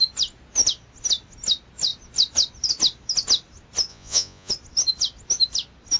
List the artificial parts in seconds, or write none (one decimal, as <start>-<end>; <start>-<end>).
3.9-4.5